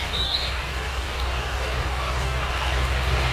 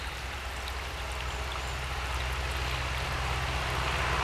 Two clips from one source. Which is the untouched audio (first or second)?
second